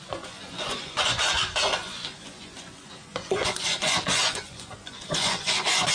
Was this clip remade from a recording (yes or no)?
yes